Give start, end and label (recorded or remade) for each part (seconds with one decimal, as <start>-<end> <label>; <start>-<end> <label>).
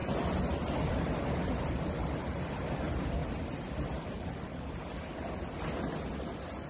0.0-2.5 remade; 2.5-6.7 recorded